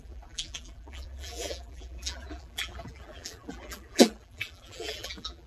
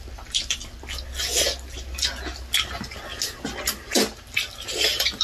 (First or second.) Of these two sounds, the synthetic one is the first